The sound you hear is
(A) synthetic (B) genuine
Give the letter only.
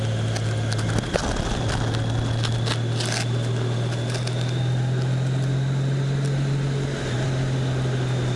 B